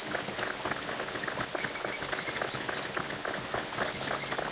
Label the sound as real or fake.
real